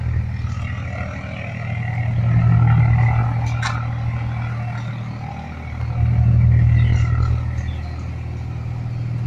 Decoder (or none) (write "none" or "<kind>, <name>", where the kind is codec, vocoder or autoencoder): none